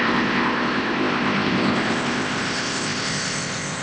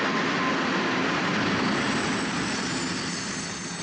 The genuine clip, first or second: second